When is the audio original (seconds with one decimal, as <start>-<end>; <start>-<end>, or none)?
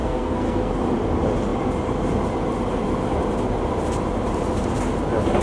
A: 0.7-5.4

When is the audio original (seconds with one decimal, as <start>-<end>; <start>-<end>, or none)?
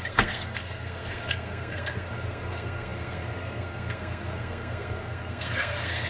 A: none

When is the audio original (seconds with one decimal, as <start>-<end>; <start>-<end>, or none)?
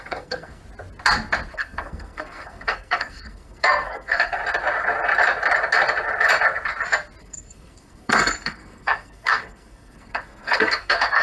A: 0.6-1.5; 4.4-7.2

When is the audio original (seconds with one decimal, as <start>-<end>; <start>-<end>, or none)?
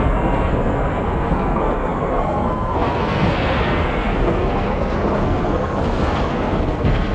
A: none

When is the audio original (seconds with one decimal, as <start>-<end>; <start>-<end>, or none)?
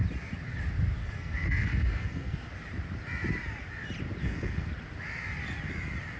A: 0.0-1.0; 2.5-4.2; 4.7-6.2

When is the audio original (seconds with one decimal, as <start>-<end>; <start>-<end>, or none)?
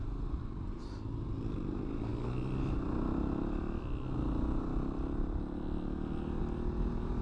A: 0.0-7.2